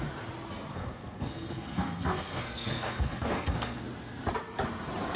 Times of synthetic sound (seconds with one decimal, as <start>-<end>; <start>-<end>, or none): 0.7-3.8